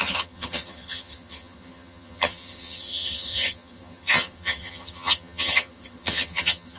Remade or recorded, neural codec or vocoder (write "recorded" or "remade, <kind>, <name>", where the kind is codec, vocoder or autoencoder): remade, vocoder, HiFi-GAN